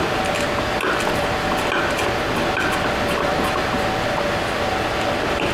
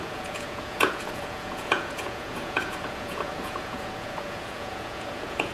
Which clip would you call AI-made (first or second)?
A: second